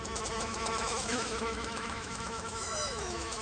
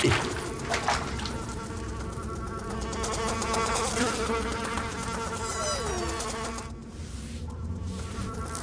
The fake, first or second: first